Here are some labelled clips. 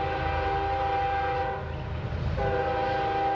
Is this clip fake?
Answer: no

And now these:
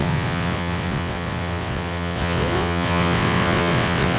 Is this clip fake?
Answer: yes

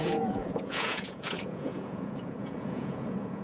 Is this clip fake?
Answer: yes